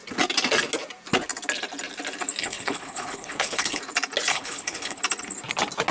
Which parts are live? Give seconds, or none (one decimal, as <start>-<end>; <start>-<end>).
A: 0.0-2.4; 3.8-4.3; 5.0-5.9